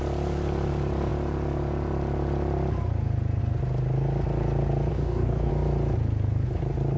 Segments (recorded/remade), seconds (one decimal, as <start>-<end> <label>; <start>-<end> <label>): 0.0-4.9 recorded; 4.9-5.5 remade; 5.5-7.0 recorded